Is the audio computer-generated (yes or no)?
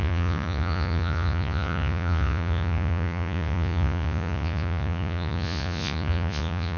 yes